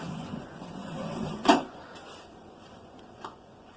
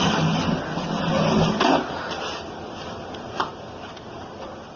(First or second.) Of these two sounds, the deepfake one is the first